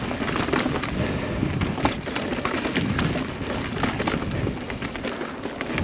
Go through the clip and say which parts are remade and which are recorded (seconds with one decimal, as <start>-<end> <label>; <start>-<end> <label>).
0.0-5.8 recorded